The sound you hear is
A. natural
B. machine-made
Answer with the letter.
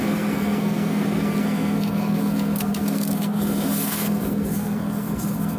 B